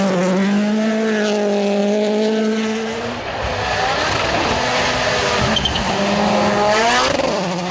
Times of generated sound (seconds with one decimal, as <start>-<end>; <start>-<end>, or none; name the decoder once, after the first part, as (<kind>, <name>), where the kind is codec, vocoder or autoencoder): none